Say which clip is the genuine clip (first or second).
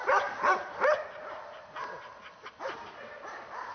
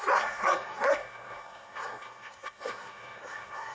first